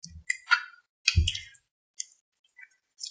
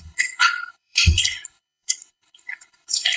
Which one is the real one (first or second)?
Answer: first